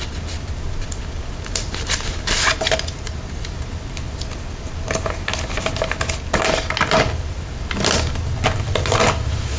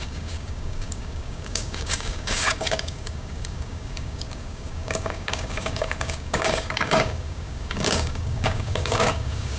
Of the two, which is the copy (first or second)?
second